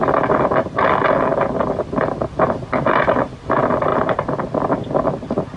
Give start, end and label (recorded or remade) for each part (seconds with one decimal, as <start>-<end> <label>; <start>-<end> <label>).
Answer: 0.0-5.6 recorded